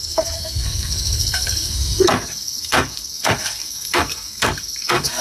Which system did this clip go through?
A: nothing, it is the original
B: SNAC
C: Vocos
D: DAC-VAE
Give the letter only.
B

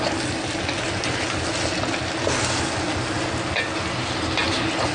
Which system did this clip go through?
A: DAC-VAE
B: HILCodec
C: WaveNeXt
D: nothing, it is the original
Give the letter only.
D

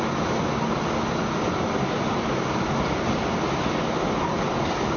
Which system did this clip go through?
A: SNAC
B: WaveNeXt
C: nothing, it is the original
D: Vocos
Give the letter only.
C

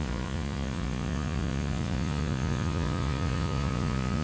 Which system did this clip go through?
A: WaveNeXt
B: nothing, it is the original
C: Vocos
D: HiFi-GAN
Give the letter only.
C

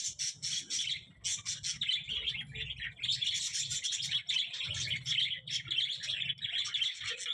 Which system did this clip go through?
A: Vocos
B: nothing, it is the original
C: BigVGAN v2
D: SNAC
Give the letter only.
B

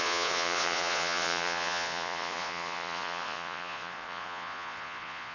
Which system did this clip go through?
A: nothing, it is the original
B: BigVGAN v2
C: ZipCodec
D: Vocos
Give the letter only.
D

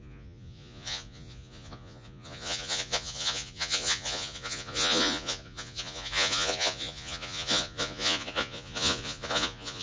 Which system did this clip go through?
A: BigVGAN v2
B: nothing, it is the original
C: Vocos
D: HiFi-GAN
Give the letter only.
C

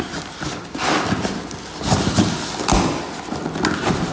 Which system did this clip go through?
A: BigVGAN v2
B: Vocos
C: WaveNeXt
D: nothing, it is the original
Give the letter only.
D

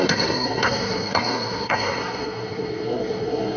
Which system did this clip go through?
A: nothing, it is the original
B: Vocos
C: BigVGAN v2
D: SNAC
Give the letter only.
D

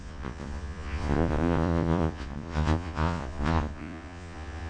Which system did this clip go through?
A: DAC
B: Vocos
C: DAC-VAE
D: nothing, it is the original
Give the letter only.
B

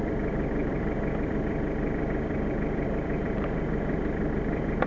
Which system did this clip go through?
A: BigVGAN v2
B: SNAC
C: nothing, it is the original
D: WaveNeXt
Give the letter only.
A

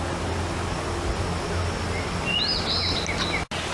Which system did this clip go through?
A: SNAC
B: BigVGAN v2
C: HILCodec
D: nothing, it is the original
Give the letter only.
D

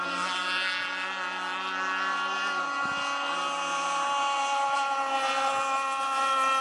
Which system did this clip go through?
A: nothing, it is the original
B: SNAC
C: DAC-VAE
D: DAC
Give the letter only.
A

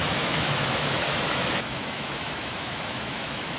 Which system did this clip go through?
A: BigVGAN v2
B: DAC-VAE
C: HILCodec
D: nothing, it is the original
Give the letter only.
B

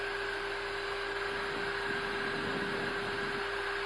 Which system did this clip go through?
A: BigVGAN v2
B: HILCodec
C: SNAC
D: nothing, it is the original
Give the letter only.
D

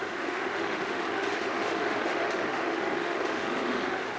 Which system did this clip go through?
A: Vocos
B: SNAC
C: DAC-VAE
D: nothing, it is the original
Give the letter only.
C